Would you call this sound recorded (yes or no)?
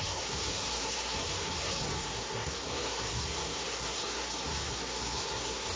no